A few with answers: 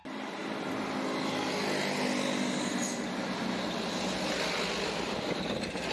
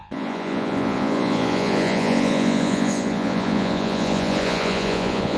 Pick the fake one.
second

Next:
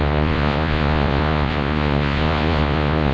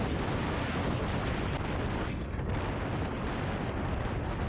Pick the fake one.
first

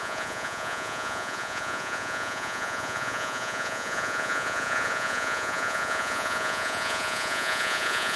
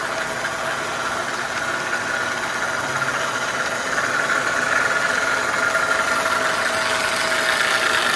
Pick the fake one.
first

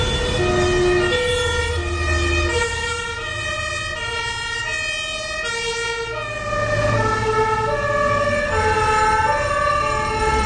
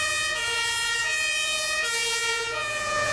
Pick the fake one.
second